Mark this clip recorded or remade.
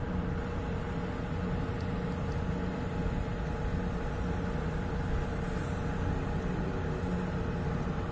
recorded